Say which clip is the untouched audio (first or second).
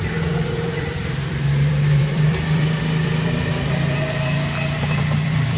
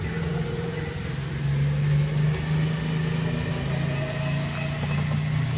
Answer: second